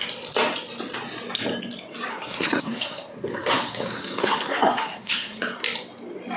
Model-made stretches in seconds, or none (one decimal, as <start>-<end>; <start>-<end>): 2.1-5.4